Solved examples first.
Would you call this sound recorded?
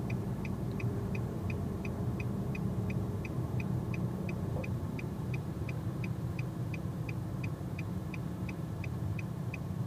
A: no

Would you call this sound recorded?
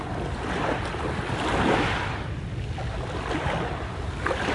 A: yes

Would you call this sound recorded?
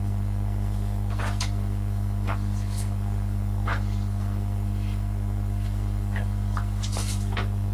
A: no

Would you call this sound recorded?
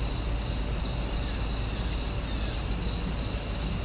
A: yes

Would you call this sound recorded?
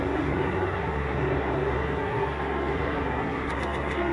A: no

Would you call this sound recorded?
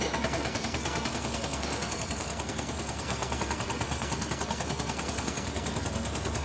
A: no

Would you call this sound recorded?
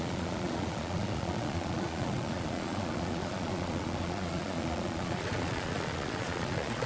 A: no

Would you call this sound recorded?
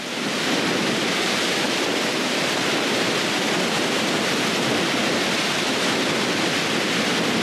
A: yes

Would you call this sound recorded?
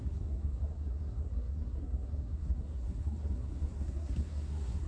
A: no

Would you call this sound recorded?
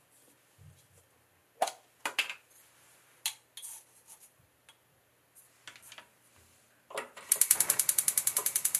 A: yes